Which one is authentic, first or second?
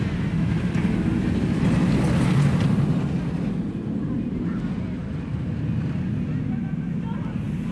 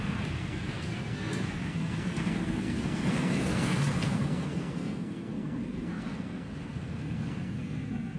first